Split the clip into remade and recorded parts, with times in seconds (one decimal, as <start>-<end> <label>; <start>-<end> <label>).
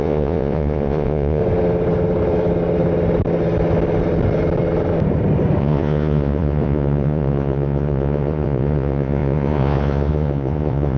0.0-1.4 remade; 1.4-5.6 recorded; 5.6-11.0 remade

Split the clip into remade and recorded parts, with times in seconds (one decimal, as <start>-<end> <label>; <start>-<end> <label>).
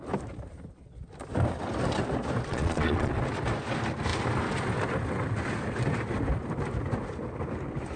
0.0-2.5 recorded; 2.5-3.1 remade; 3.1-8.0 recorded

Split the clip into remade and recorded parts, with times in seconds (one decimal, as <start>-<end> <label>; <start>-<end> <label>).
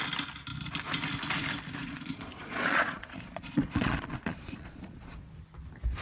0.0-1.8 recorded; 1.8-5.3 remade; 5.3-6.0 recorded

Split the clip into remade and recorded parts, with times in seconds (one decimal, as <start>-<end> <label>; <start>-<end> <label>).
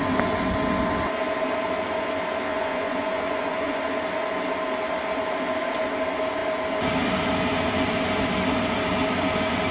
0.0-2.5 recorded; 2.5-3.8 remade; 3.8-9.7 recorded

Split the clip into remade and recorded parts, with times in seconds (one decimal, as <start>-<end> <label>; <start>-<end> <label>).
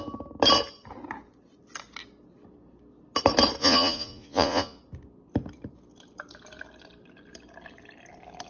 0.0-3.6 recorded; 3.6-4.8 remade; 4.8-8.5 recorded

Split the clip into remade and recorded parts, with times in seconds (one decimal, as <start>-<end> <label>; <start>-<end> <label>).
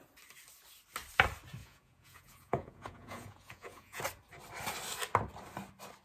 0.0-1.6 recorded; 1.6-4.0 remade; 4.0-6.0 recorded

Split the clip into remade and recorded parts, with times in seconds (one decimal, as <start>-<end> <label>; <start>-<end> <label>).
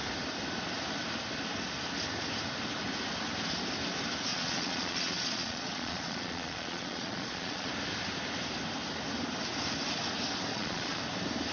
0.0-4.3 recorded; 4.3-7.7 remade; 7.7-10.5 recorded; 10.5-11.0 remade; 11.0-11.5 recorded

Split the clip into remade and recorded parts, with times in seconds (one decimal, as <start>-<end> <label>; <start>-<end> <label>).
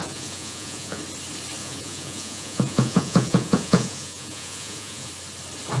0.0-1.0 remade; 1.0-1.6 recorded; 1.6-5.1 remade; 5.1-5.8 recorded